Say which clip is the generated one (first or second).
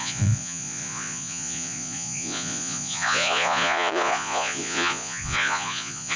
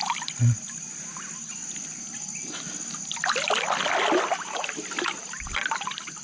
first